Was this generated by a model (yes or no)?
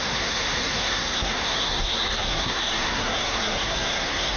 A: yes